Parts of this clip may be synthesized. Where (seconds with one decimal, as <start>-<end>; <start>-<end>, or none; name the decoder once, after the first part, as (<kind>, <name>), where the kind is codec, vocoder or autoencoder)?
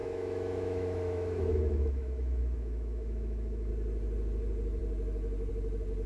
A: 0.0-3.7 (autoencoder, DAC-VAE)